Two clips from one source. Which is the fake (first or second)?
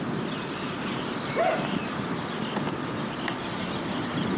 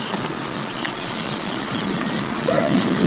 second